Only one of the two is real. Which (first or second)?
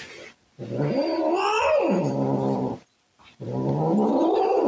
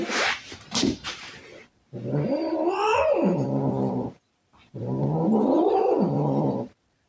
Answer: first